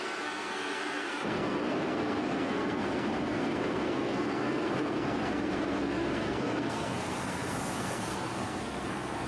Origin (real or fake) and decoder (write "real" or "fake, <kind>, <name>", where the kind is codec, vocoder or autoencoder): fake, codec, SNAC